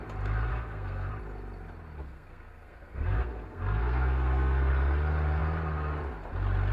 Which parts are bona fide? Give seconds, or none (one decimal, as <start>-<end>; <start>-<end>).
0.0-0.5; 1.1-2.0; 4.7-6.7